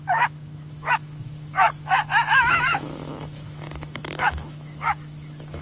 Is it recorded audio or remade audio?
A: remade